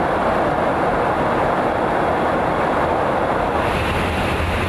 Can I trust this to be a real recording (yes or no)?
yes